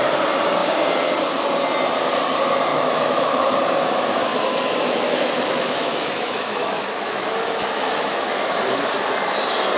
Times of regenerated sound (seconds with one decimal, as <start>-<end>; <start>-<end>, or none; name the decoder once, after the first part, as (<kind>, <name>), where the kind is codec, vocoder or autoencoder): 2.7-3.6 (autoencoder, DAC-VAE); 4.2-8.8